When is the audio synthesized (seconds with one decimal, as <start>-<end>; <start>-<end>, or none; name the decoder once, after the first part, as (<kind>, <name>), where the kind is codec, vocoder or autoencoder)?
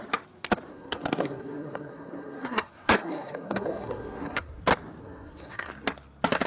0.7-4.6 (codec, SNAC); 5.0-5.7